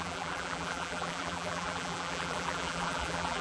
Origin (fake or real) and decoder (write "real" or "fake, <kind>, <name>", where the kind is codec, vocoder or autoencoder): fake, vocoder, BigVGAN v2